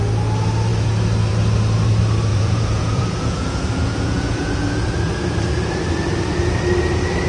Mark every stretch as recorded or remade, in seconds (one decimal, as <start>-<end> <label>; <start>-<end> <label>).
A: 0.0-2.3 recorded; 2.3-4.9 remade; 4.9-7.3 recorded